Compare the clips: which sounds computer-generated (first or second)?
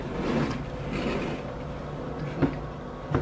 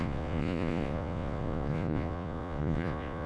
second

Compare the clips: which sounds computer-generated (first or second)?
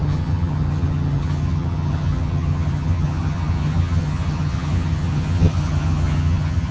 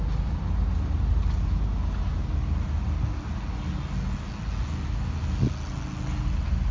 first